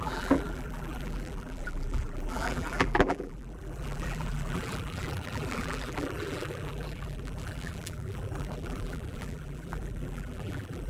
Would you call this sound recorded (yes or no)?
no